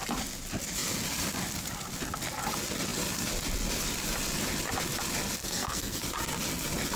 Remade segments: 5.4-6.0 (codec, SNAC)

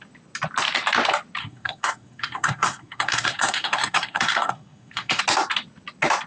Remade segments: 1.4-5.2 (codec, SNAC)

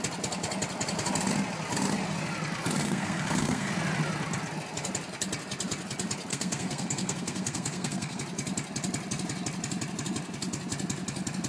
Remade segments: 2.8-3.7 (codec, SNAC); 6.3-8.2

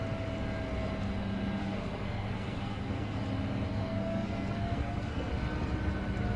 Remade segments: 1.6-3.2 (codec, SNAC); 3.7-5.3

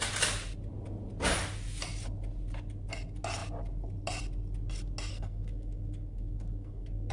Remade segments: 5.1-7.1 (codec, SNAC)

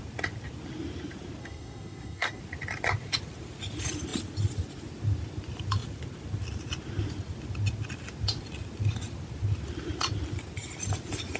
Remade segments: 1.4-2.4 (codec, SNAC)

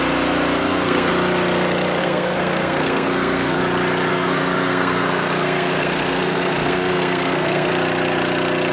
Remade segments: 0.6-1.1 (codec, SNAC); 2.0-3.6; 4.1-7.7